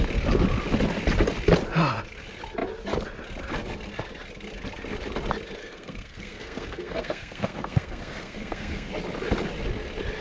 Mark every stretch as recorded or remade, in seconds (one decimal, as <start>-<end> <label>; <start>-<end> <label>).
0.0-5.6 recorded; 5.6-8.9 remade; 8.9-10.2 recorded